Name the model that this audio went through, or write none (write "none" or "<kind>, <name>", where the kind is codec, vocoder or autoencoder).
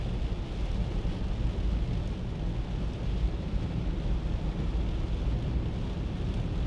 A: none